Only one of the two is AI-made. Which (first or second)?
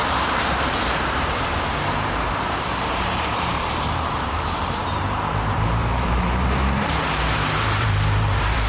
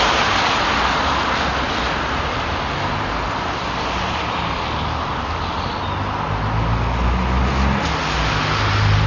first